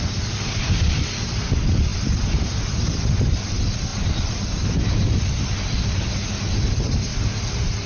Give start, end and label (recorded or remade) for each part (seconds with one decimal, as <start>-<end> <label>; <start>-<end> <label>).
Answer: 0.0-7.1 remade; 7.1-7.9 recorded